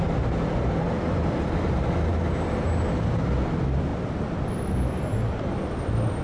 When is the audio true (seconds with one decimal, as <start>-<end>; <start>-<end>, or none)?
0.0-6.2